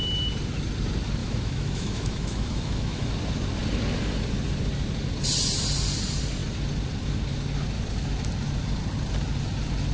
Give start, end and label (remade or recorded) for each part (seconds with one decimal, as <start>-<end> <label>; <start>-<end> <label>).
0.0-1.2 recorded; 1.2-3.1 remade; 3.1-9.9 recorded